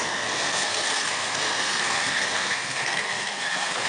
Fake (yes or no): yes